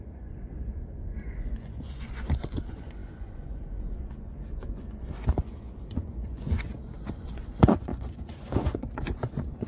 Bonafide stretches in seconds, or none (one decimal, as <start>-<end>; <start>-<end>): none